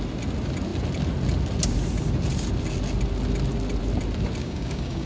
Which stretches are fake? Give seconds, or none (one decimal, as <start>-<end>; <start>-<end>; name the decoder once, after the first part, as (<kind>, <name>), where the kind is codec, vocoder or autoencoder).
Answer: 4.4-5.1 (codec, DAC)